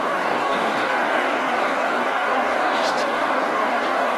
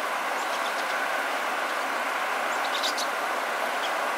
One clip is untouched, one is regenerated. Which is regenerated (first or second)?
first